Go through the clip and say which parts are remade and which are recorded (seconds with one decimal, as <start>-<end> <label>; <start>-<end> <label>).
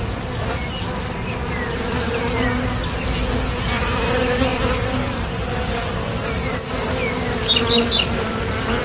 0.0-8.8 recorded